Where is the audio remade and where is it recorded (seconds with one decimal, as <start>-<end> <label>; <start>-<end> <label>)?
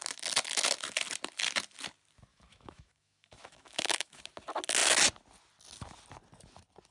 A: 0.0-2.3 recorded; 2.3-4.2 remade; 4.2-6.9 recorded